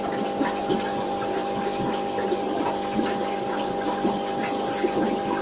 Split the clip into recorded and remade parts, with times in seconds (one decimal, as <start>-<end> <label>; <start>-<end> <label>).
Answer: 0.0-5.4 recorded

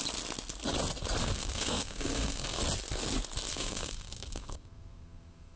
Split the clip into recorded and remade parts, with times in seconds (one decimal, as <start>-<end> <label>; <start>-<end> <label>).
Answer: 0.0-1.2 recorded; 1.2-2.6 remade; 2.6-3.5 recorded; 3.5-5.6 remade

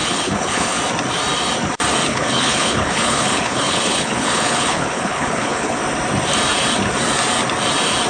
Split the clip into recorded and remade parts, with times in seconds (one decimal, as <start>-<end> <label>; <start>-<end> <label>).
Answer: 0.0-0.8 remade; 0.8-2.1 recorded; 2.1-5.8 remade; 5.8-8.1 recorded

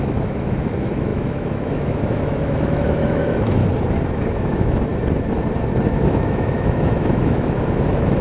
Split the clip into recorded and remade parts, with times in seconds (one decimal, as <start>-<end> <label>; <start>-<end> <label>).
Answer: 0.0-3.6 remade; 3.6-4.3 recorded; 4.3-4.9 remade; 4.9-5.9 recorded; 5.9-8.2 remade

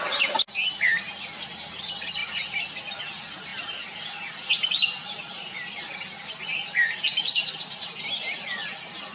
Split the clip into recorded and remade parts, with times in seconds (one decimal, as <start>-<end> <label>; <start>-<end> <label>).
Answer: 0.0-9.1 recorded